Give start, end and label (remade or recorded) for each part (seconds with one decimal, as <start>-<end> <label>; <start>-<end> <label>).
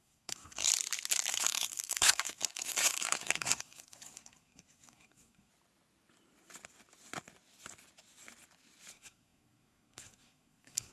0.0-0.7 remade; 0.7-1.3 recorded; 1.3-5.5 remade; 5.5-8.9 recorded; 8.9-10.9 remade